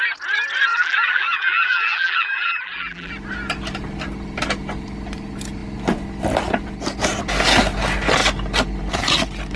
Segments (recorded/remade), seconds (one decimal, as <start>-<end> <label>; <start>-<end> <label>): 0.0-0.7 recorded; 0.7-3.1 remade; 3.1-9.6 recorded